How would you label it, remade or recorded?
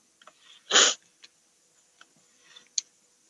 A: recorded